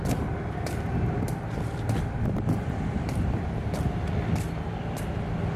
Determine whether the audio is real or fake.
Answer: real